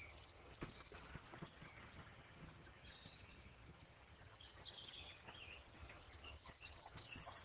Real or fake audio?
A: fake